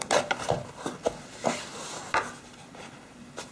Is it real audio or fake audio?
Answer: real